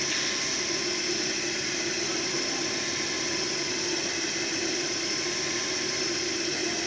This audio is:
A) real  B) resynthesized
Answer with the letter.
A